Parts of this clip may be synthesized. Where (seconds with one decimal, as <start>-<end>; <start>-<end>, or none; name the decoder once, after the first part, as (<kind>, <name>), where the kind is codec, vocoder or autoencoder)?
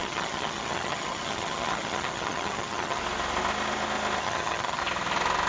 0.0-3.0 (vocoder, HiFi-GAN); 4.2-4.8